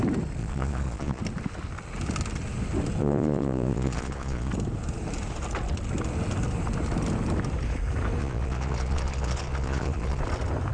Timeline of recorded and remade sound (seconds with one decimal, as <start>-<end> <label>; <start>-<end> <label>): 0.0-0.4 recorded; 0.4-1.2 remade; 1.2-3.0 recorded; 3.0-4.5 remade; 4.5-8.2 recorded; 8.2-10.2 remade; 10.2-10.7 recorded